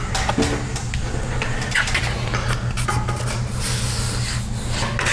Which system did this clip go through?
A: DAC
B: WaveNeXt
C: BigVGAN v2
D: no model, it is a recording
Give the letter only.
D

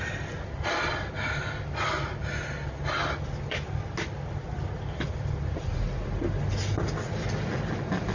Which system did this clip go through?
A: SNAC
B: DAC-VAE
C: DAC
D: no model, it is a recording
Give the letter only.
D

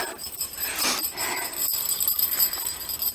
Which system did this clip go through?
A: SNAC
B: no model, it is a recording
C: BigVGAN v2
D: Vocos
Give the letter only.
B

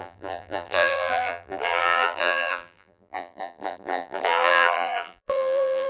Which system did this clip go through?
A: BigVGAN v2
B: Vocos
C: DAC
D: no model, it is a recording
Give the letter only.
A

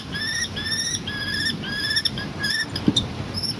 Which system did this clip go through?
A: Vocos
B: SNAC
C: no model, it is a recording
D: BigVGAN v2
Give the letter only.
D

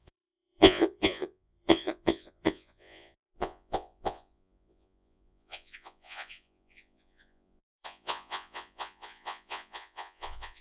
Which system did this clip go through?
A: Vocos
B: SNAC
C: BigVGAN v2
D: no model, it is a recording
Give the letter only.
A